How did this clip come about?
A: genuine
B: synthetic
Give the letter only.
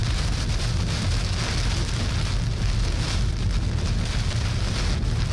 A